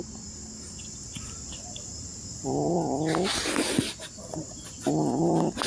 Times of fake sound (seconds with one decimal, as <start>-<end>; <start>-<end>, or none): none